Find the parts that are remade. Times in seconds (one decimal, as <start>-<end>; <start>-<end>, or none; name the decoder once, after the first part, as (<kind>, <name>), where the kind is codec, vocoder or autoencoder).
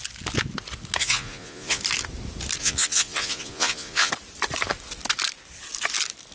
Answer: 1.0-1.8 (vocoder, Vocos); 2.6-4.1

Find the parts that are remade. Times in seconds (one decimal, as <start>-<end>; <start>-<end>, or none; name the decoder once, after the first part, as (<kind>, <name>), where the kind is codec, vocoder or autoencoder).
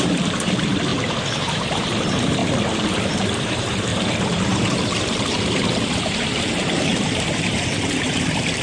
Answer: 0.0-0.9 (vocoder, BigVGAN v2); 1.4-2.4; 3.1-8.6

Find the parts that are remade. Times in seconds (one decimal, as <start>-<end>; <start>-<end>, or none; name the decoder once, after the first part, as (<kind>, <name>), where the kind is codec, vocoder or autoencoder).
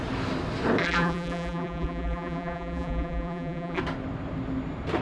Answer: 0.8-3.8 (vocoder, BigVGAN v2)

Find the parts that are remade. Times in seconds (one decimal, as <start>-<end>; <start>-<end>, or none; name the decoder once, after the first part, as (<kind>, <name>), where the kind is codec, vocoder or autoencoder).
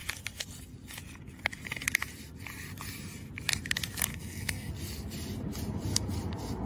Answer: 4.1-4.7 (codec, SNAC)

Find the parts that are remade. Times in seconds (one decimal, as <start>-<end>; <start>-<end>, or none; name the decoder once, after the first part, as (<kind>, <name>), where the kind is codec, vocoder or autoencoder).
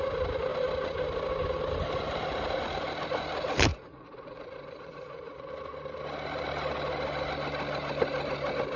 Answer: 3.7-5.5 (vocoder, Vocos)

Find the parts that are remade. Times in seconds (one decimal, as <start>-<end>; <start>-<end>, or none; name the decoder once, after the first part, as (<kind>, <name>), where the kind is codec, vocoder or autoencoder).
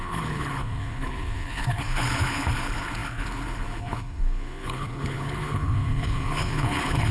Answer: 0.0-7.1 (codec, HILCodec)